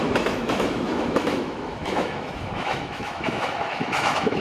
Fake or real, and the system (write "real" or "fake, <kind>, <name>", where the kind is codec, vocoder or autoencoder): fake, autoencoder, DAC-VAE